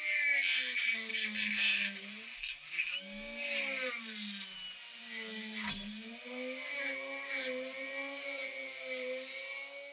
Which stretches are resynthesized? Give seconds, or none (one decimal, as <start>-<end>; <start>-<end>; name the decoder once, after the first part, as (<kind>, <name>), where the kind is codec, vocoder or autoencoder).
none